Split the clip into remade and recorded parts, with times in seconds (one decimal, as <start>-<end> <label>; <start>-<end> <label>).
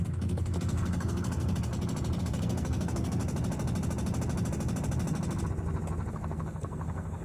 0.0-1.7 remade; 1.7-2.2 recorded; 2.2-3.2 remade; 3.2-6.1 recorded; 6.1-7.2 remade